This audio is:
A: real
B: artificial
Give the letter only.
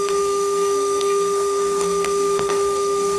B